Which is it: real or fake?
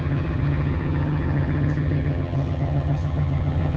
fake